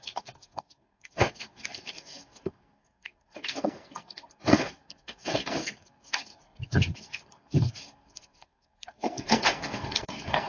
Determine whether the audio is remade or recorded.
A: remade